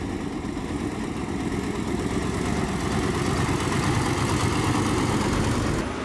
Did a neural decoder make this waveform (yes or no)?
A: no